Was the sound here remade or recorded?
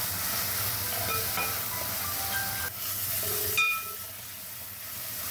recorded